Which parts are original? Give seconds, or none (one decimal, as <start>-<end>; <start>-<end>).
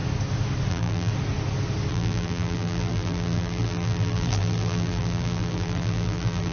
0.0-0.7; 1.1-1.9